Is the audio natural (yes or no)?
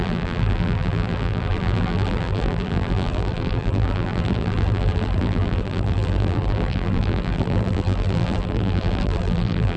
no